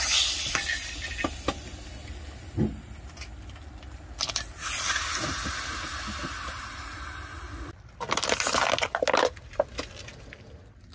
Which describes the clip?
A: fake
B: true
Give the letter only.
B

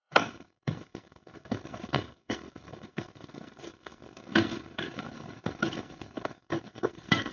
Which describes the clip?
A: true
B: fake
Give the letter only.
B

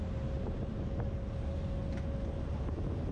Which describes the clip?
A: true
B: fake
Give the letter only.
A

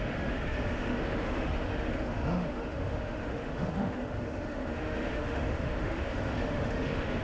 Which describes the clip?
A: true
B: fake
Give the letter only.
B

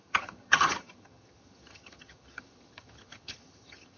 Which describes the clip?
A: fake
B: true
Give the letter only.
A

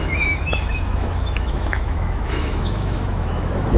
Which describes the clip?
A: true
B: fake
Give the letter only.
B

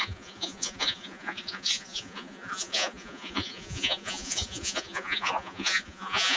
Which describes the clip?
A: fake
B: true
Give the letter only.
A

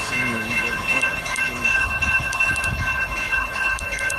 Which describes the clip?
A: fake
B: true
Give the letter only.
A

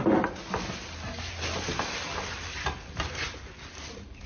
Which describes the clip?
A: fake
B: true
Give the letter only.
A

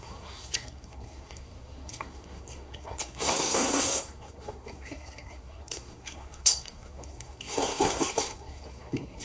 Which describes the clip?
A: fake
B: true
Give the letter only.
A